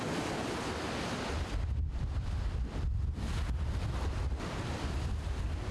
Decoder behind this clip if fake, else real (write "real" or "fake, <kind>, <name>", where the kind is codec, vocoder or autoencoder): real